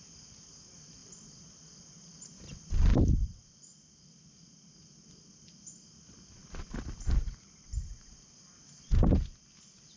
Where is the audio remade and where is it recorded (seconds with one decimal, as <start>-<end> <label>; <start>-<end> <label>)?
0.0-10.0 recorded